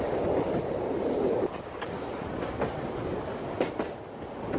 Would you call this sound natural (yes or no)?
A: yes